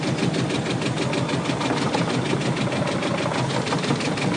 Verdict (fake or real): real